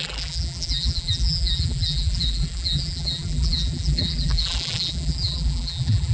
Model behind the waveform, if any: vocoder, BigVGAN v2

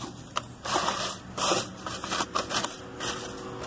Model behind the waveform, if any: vocoder, BigVGAN v2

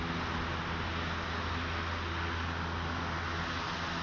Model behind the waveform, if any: none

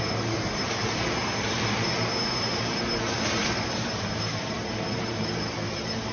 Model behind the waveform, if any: vocoder, BigVGAN v2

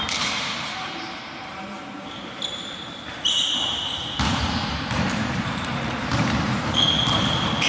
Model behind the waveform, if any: vocoder, BigVGAN v2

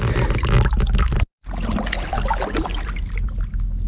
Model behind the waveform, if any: none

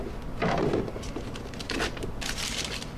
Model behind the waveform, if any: none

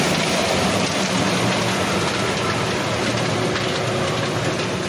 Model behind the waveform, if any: none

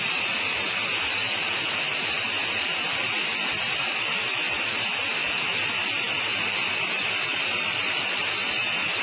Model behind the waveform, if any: vocoder, BigVGAN v2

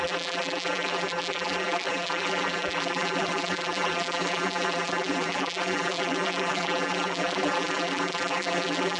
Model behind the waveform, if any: vocoder, BigVGAN v2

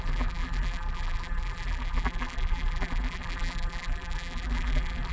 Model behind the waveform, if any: vocoder, BigVGAN v2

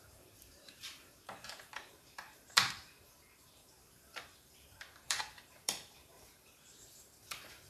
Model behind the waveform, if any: vocoder, BigVGAN v2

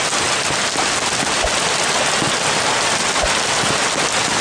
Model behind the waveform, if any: none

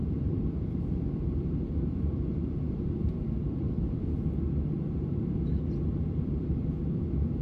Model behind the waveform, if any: vocoder, BigVGAN v2